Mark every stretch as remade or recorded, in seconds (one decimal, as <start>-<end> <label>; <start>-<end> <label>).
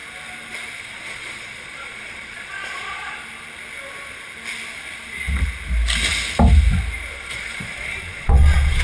0.0-0.8 recorded; 0.8-3.2 remade; 3.2-7.1 recorded; 7.1-8.8 remade